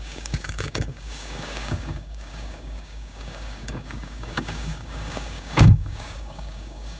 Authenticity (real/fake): fake